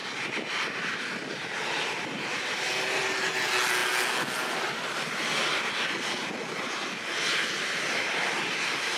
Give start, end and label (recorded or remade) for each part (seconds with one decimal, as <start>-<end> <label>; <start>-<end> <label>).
0.0-9.0 recorded